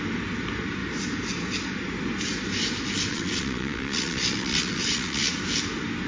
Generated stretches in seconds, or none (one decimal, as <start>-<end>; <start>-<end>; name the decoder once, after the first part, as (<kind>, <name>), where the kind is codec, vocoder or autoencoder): 3.1-5.3 (vocoder, WaveNeXt)